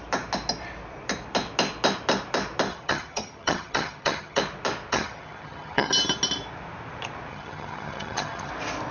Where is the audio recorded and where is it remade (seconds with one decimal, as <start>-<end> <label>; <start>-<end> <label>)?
0.0-2.7 recorded; 2.7-4.4 remade; 4.4-4.9 recorded; 4.9-5.9 remade; 5.9-7.3 recorded; 7.3-8.5 remade; 8.5-8.9 recorded